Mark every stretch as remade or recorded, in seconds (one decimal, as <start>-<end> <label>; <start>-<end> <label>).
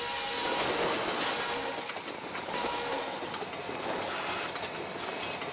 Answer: 0.0-5.5 recorded